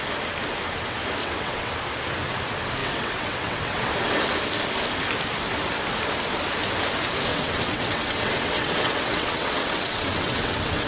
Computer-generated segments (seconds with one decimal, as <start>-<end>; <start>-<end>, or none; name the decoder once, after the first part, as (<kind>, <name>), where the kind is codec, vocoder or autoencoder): 1.2-1.7 (vocoder, WaveNeXt); 2.8-3.9; 7.3-10.9